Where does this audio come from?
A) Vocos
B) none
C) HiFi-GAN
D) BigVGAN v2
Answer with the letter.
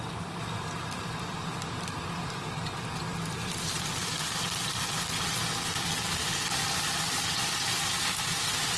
B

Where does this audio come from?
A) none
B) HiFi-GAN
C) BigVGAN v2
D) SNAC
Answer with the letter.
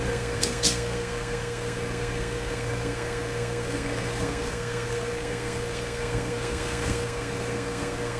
D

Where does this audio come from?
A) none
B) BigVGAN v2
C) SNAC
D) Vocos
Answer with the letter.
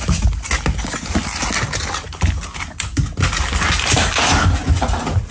A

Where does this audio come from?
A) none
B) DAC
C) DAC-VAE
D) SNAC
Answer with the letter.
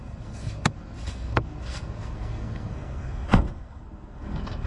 D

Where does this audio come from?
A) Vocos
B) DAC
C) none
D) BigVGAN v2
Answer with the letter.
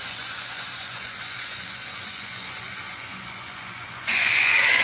A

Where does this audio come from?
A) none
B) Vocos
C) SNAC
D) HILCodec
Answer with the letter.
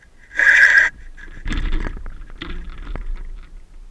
A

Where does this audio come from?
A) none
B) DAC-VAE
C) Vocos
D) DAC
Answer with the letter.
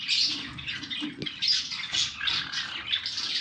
A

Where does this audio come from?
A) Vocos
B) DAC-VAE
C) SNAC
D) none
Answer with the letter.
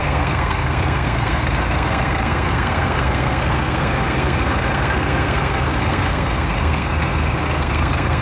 C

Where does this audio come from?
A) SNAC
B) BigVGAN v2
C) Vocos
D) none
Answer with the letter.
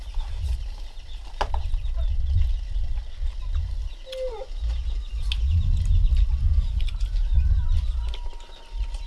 D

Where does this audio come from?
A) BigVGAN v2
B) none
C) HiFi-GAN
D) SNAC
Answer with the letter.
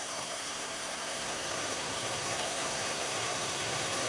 D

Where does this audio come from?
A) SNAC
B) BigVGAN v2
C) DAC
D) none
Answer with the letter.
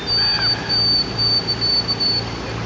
D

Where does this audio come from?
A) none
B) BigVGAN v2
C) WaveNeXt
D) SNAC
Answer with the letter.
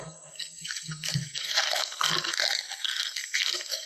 D